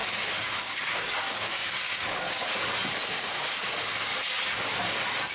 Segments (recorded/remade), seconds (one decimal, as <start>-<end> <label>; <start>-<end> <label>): 0.0-2.5 remade; 2.5-3.1 recorded; 3.1-4.1 remade; 4.1-5.3 recorded